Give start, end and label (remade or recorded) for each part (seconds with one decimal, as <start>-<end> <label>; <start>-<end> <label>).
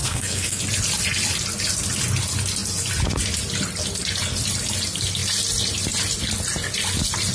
0.0-0.6 remade; 0.6-7.3 recorded